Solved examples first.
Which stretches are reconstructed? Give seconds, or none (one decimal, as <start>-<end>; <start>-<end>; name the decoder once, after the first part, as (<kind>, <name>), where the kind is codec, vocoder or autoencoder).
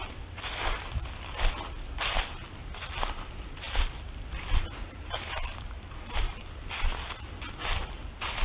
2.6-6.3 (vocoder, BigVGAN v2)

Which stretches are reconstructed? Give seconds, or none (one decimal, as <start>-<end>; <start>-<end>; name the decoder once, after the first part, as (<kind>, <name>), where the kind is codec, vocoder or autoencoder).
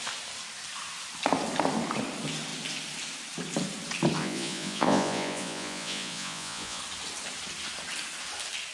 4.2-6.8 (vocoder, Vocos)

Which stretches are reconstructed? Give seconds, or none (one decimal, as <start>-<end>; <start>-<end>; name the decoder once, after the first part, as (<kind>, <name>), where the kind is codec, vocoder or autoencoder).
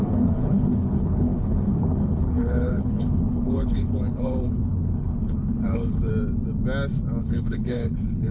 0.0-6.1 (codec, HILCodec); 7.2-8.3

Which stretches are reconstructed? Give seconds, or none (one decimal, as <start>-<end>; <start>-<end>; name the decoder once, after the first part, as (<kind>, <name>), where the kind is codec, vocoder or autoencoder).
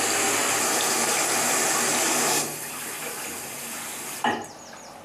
none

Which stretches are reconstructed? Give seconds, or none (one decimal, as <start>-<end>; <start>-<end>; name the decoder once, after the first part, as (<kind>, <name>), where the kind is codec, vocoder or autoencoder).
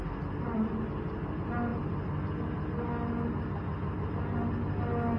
none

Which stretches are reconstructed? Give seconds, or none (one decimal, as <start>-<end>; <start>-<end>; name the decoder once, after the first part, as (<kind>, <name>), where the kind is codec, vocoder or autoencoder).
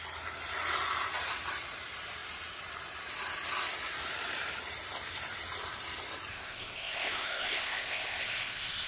6.3-8.9 (codec, ZipCodec)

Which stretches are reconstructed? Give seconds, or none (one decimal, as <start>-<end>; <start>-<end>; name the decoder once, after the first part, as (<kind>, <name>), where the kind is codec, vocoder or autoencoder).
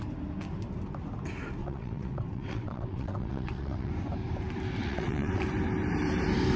1.6-3.9 (vocoder, WaveNeXt); 4.8-5.4